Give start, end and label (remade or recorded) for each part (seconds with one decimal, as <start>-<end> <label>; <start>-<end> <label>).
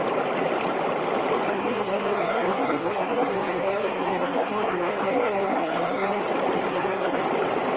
0.0-1.5 recorded; 1.5-6.2 remade; 6.2-6.7 recorded; 6.7-7.2 remade; 7.2-7.8 recorded